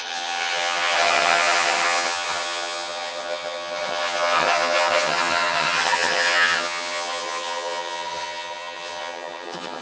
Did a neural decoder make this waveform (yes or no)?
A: yes